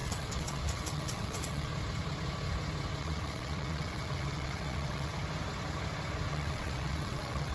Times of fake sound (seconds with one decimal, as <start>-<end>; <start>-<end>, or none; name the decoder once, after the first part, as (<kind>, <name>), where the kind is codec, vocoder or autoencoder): 0.0-1.7 (vocoder, WaveNeXt); 3.0-5.1; 6.3-7.5